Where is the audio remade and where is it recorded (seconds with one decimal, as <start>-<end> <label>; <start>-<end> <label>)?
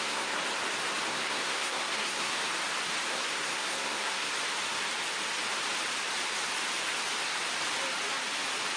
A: 0.0-0.4 remade; 0.4-1.1 recorded; 1.1-2.3 remade; 2.3-3.1 recorded; 3.1-4.3 remade; 4.3-8.8 recorded